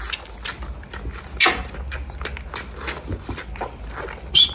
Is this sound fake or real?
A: real